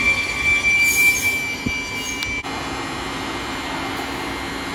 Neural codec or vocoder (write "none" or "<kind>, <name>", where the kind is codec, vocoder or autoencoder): none